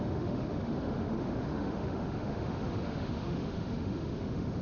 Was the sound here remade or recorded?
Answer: remade